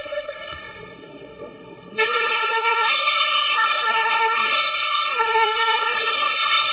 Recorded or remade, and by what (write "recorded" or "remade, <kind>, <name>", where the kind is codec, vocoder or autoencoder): remade, codec, SNAC